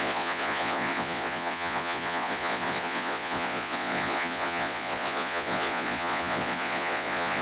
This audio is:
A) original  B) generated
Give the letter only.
B